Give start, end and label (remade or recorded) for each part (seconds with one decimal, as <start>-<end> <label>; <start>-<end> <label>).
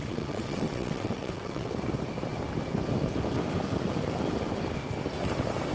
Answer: 0.0-1.7 remade; 1.7-5.7 recorded